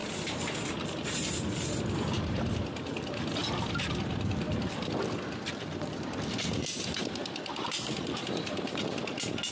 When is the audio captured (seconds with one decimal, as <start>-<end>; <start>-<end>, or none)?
0.0-3.4; 6.5-7.0; 9.0-9.5